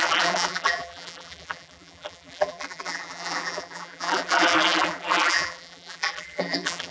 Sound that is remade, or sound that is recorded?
remade